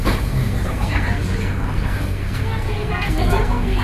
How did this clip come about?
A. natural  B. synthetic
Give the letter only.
B